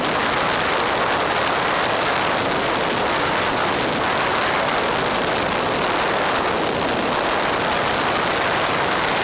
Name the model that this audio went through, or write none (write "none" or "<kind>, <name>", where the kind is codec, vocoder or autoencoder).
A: none